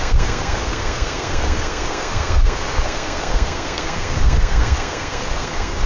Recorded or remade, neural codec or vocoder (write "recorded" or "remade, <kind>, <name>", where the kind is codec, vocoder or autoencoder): remade, codec, SNAC